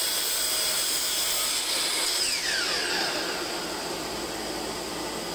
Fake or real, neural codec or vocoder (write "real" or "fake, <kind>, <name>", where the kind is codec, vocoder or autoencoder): real